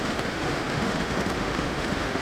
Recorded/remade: remade